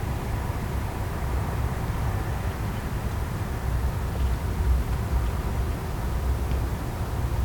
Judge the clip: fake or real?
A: real